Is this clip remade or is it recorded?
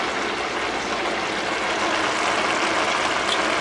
recorded